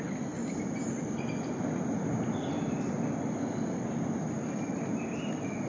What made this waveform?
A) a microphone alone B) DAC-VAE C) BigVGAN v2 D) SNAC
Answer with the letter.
A